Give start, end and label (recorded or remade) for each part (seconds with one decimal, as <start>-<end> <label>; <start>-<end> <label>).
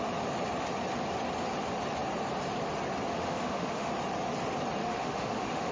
0.0-3.1 recorded; 3.1-3.9 remade; 3.9-4.8 recorded; 4.8-5.7 remade